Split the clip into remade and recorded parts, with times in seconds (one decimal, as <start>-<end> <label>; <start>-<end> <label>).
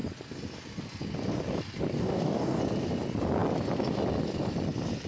0.0-1.9 recorded; 1.9-2.6 remade; 2.6-5.1 recorded